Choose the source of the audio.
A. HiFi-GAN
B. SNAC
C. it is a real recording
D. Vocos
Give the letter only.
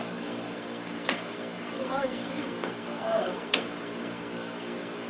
B